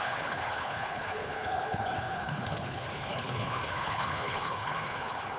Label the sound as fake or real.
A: fake